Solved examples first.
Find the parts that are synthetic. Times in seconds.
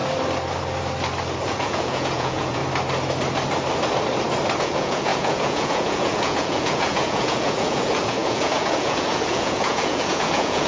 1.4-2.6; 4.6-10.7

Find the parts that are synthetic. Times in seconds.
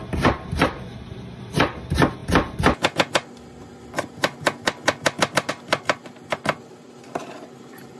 none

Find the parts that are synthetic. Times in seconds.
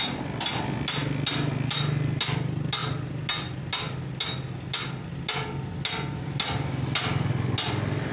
none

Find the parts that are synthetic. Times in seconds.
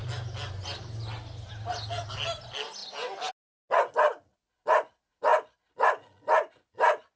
none